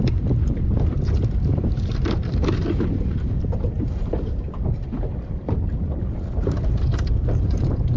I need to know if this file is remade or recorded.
remade